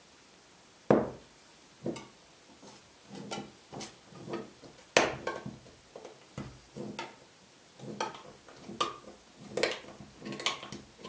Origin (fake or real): real